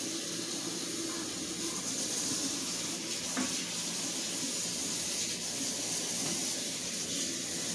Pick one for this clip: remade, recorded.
recorded